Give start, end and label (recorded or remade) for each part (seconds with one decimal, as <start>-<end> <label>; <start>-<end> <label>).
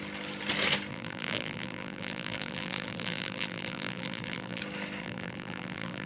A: 0.0-0.9 recorded; 0.9-4.6 remade; 4.6-5.0 recorded; 5.0-6.1 remade